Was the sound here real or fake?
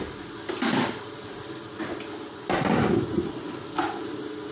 fake